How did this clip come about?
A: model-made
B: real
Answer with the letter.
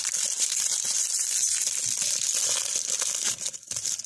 B